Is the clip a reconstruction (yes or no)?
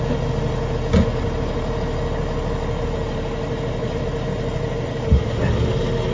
no